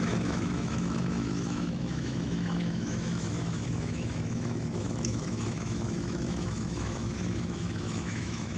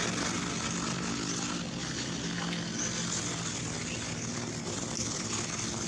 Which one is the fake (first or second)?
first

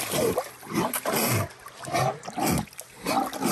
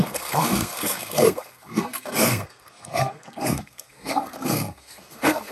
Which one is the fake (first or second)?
second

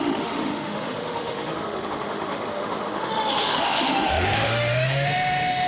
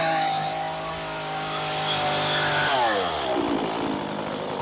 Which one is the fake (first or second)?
first